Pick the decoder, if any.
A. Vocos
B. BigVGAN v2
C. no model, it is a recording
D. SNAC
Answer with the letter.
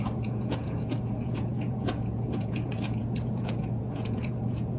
A